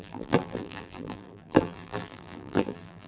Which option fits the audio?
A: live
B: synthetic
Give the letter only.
B